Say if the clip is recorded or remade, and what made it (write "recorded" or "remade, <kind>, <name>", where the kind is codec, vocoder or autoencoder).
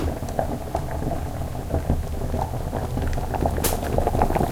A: recorded